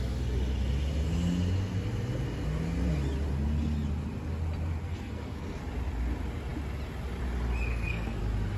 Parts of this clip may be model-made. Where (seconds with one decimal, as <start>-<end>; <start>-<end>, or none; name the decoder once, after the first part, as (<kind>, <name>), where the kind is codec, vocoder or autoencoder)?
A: 4.8-5.6 (codec, SNAC); 7.7-8.2